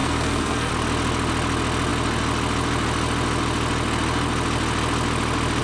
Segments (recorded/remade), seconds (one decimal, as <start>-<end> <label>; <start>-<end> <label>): 0.0-0.7 remade; 0.7-5.6 recorded